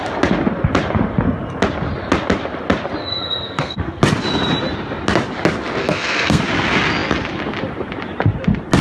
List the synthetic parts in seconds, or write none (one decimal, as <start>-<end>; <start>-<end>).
3.0-4.0; 5.8-6.4